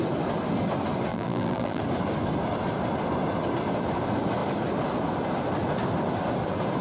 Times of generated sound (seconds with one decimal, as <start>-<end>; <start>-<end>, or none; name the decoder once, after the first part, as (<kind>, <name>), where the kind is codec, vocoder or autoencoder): 1.1-1.8 (vocoder, BigVGAN v2)